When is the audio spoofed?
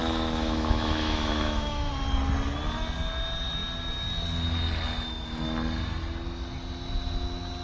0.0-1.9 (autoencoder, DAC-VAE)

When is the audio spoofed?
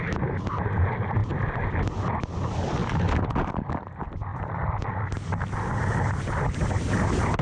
none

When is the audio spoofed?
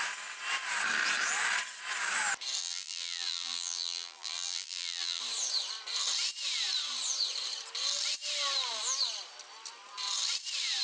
2.6-5.2 (vocoder, BigVGAN v2)